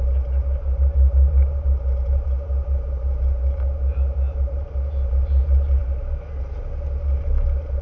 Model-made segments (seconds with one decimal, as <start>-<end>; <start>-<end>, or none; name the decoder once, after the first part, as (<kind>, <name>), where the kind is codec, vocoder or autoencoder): none